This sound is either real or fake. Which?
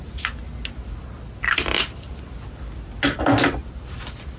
real